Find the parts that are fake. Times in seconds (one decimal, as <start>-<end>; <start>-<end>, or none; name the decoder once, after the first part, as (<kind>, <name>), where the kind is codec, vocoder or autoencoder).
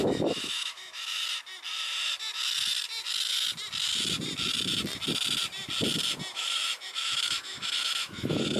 0.0-1.2 (autoencoder, DAC-VAE); 6.3-8.6